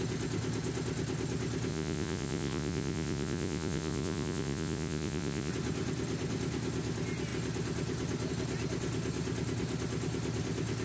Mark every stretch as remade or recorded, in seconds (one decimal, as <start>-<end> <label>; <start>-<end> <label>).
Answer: 0.0-1.7 recorded; 1.7-5.5 remade; 5.5-10.8 recorded